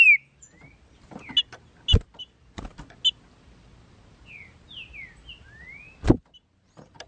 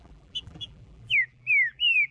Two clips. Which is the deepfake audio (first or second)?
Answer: second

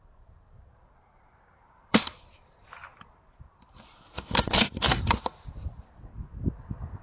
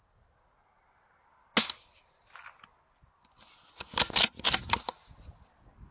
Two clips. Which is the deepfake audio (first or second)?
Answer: first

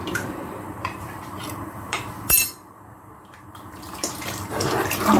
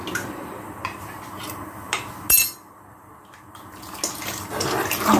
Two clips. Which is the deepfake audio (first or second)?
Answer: first